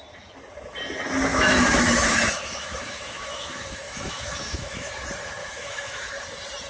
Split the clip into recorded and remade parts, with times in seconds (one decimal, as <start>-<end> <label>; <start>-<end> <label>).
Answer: 0.0-1.3 recorded; 1.3-4.9 remade; 4.9-5.4 recorded; 5.4-6.1 remade; 6.1-6.7 recorded